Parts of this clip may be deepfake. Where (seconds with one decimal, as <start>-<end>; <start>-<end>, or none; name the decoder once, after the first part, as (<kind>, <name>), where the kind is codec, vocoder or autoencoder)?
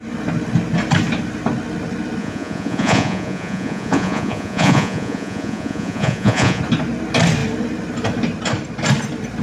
2.2-6.6 (vocoder, Vocos)